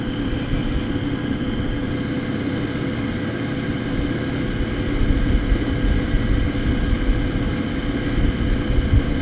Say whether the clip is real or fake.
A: real